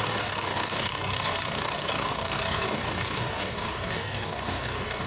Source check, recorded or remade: remade